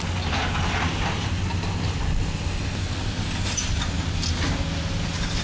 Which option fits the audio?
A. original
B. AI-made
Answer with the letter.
A